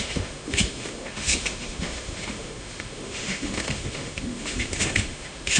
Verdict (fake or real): fake